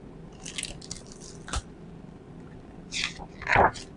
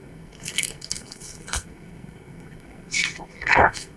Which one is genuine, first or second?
first